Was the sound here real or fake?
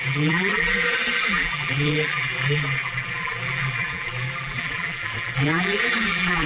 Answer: fake